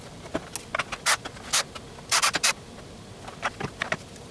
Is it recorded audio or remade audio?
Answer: recorded